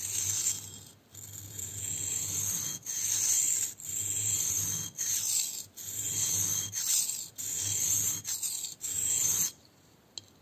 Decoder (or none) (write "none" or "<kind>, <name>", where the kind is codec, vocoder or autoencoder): none